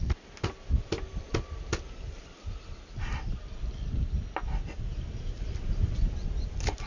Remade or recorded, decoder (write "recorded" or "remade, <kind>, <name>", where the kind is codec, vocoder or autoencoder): recorded